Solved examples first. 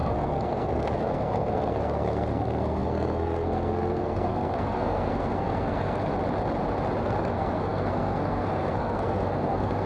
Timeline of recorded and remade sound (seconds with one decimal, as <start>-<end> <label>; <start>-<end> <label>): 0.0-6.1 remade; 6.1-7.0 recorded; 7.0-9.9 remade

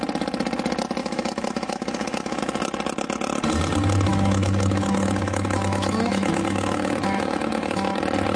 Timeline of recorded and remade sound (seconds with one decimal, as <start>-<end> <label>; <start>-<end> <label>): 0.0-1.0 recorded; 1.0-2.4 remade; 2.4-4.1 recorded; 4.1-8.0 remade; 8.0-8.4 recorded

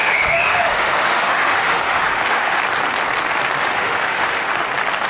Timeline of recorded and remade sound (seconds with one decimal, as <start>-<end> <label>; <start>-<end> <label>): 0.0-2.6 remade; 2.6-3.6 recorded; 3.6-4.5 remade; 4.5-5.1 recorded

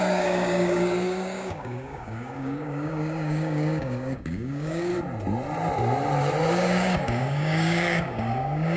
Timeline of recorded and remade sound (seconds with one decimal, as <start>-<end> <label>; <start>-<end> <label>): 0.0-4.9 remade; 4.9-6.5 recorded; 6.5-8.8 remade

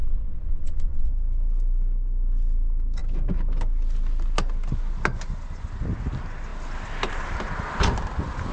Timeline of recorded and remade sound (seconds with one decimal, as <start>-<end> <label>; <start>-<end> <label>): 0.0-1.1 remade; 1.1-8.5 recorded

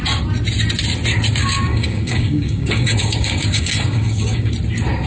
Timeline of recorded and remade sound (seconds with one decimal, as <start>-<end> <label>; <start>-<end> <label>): 0.0-1.4 recorded; 1.4-4.5 remade; 4.5-5.1 recorded